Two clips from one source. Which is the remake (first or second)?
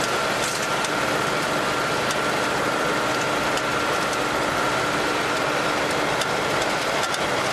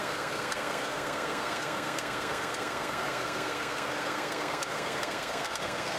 second